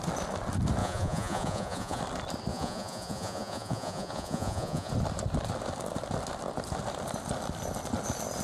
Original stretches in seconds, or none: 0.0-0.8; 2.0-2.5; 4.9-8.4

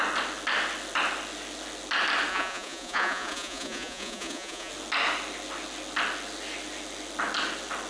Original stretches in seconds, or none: 0.0-2.3; 4.7-7.9

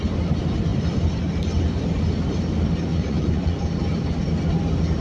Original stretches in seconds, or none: 0.0-2.9; 3.6-5.0

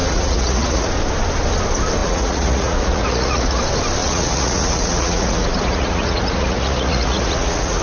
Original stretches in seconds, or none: 0.9-2.0; 3.6-4.0

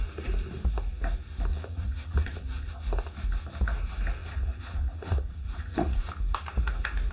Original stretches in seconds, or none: 0.0-1.5; 2.7-4.2; 6.1-7.1

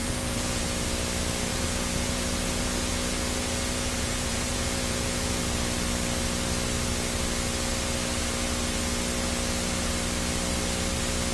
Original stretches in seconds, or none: 0.6-1.5; 5.4-11.3

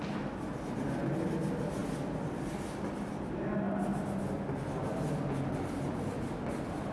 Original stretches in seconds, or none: 0.0-6.9